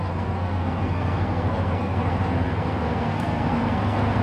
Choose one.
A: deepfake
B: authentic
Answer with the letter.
A